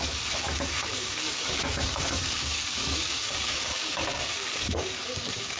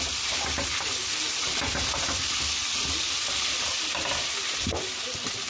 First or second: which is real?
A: second